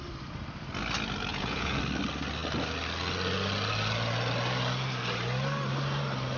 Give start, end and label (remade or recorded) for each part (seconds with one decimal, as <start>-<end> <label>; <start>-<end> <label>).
0.0-1.3 recorded; 1.3-1.8 remade; 1.8-6.4 recorded